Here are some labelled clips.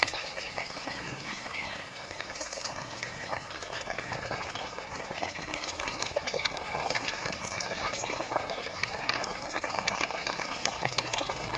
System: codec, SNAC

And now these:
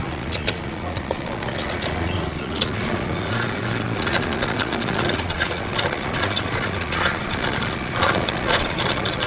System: vocoder, Vocos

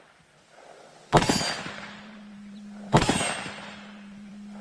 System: vocoder, BigVGAN v2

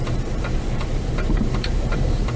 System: vocoder, BigVGAN v2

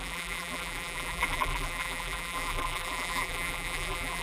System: vocoder, BigVGAN v2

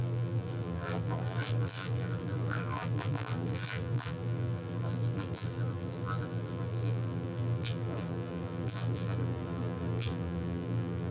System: vocoder, BigVGAN v2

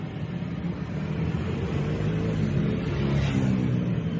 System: none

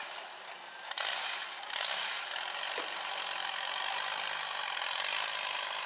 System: none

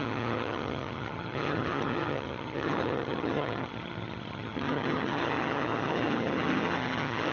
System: vocoder, HiFi-GAN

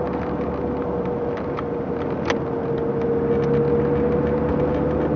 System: none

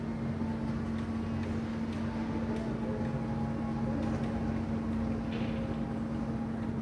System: none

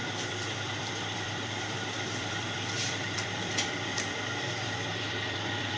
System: vocoder, BigVGAN v2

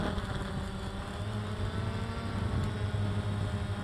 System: none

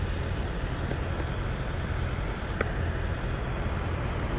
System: none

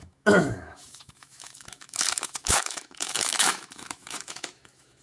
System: autoencoder, DAC-VAE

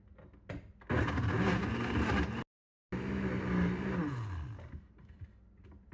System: none